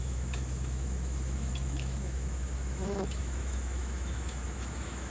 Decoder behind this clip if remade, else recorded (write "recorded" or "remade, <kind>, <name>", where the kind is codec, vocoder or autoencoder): remade, autoencoder, DAC-VAE